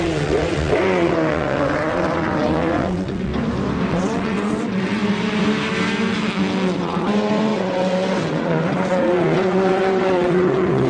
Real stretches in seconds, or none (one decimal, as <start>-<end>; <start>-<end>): 3.3-3.9; 5.0-6.8

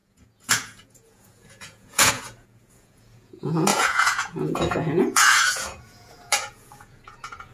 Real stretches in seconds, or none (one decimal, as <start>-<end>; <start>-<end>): none

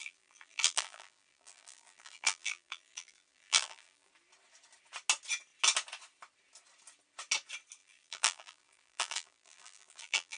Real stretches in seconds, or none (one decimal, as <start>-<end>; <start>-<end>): 4.1-7.8

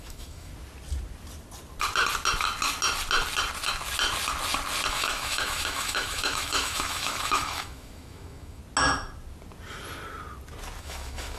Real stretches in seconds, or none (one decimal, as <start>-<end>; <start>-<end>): 0.5-4.9; 8.6-10.8

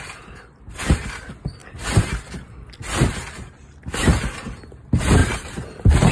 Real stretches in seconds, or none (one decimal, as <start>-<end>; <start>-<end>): 0.0-5.2

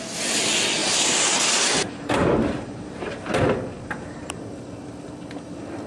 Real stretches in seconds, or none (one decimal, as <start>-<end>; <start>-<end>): 0.0-0.8; 4.3-5.9

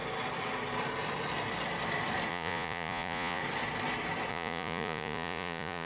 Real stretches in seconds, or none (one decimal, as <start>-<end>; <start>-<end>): 0.0-2.3; 3.4-4.3